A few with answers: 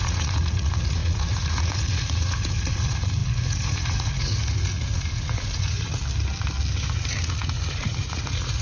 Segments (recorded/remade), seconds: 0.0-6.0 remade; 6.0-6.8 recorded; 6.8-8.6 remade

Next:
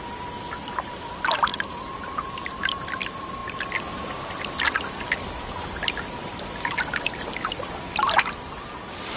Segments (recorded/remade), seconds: 0.0-1.5 recorded; 1.5-2.7 remade; 2.7-6.2 recorded; 6.2-9.2 remade

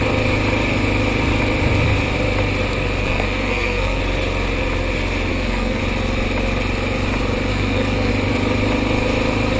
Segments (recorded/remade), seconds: 0.0-3.0 recorded; 3.0-4.0 remade; 4.0-5.3 recorded; 5.3-5.8 remade; 5.8-7.5 recorded; 7.5-8.1 remade; 8.1-9.6 recorded

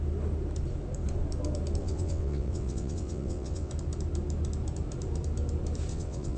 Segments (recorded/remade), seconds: 0.0-1.8 recorded; 1.8-3.7 remade; 3.7-5.9 recorded; 5.9-6.4 remade

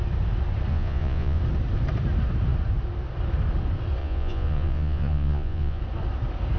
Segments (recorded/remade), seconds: 0.0-0.7 recorded; 0.7-1.4 remade; 1.4-4.0 recorded; 4.0-5.8 remade; 5.8-6.6 recorded

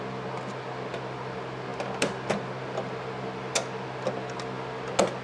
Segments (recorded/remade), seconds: 0.0-5.2 recorded

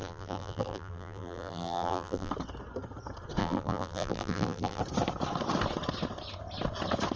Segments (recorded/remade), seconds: 0.0-2.3 remade; 2.3-3.4 recorded; 3.4-4.8 remade; 4.8-7.2 recorded